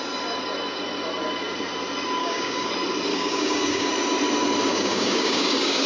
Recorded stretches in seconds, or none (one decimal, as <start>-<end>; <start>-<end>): 0.0-2.2; 2.7-3.1; 3.9-4.7